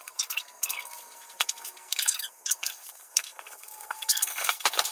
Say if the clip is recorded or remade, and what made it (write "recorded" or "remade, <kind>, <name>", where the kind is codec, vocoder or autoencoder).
remade, codec, SNAC